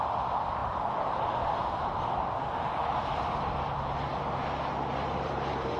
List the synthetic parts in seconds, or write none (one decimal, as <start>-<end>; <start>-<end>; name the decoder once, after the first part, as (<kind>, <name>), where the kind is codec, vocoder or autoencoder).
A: 4.9-5.8 (vocoder, BigVGAN v2)